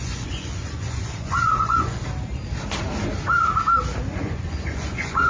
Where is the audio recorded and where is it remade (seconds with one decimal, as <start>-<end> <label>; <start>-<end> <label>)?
0.0-2.0 remade; 2.0-4.2 recorded; 4.2-5.3 remade